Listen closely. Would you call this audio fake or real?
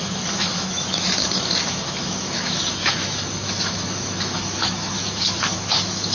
fake